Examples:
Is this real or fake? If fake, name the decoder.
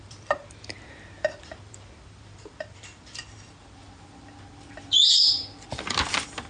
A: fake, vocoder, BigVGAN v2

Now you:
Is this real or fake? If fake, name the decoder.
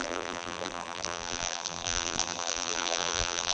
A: fake, vocoder, BigVGAN v2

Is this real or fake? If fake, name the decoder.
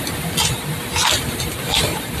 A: real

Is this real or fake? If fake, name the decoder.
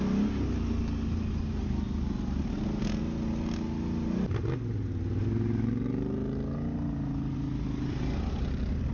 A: real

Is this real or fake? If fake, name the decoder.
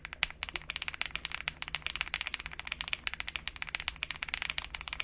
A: real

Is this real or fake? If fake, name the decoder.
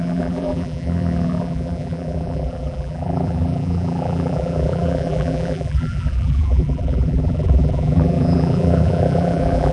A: fake, vocoder, BigVGAN v2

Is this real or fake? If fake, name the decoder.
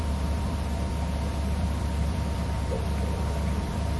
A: fake, vocoder, BigVGAN v2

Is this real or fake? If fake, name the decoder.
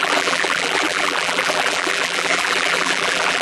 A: fake, vocoder, BigVGAN v2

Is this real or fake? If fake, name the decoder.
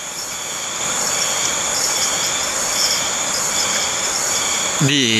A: real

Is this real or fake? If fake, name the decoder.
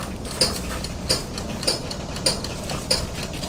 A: fake, vocoder, BigVGAN v2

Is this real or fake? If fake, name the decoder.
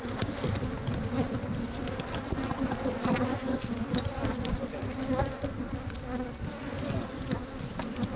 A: real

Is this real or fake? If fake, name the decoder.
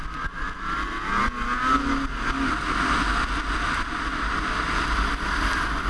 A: real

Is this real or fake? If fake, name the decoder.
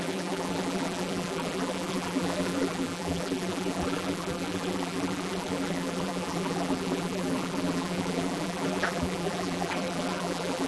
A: fake, vocoder, BigVGAN v2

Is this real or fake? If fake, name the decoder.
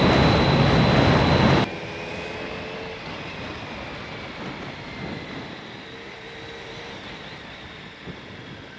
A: real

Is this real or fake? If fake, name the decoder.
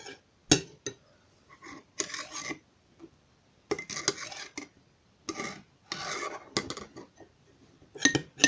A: real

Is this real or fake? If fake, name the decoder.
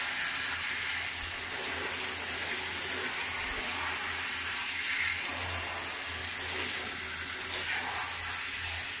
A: real